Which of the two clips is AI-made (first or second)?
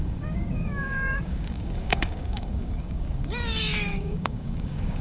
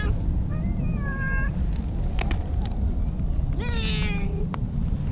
first